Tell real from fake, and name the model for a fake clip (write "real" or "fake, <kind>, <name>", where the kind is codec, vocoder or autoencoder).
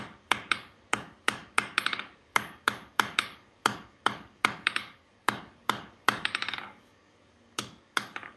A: fake, codec, DAC